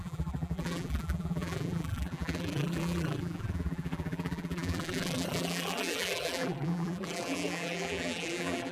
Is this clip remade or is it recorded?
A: remade